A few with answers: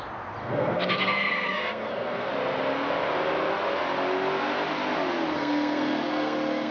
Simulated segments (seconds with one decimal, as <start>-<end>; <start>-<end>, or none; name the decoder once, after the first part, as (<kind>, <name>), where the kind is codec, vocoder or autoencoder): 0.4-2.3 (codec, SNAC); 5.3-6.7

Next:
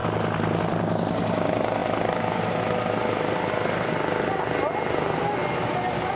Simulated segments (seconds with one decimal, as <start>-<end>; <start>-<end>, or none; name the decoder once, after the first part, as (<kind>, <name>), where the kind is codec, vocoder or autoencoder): none

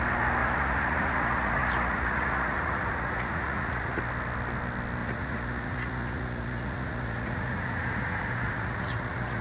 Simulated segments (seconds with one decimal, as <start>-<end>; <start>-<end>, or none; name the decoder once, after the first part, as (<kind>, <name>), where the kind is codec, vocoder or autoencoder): 0.4-4.0 (vocoder, Vocos); 5.0-9.4

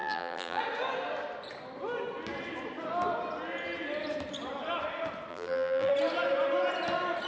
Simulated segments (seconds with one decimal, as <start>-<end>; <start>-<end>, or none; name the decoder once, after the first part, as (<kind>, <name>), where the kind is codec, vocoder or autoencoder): 0.0-0.6 (vocoder, BigVGAN v2); 5.3-5.9

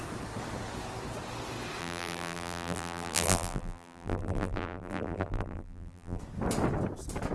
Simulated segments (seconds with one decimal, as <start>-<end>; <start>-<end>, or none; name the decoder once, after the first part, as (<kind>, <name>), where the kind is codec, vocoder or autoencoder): 1.8-6.2 (vocoder, BigVGAN v2)

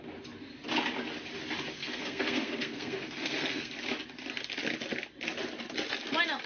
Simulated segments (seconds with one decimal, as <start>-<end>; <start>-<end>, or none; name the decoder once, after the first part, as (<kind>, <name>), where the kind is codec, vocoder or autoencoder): 1.8-3.7 (codec, SNAC)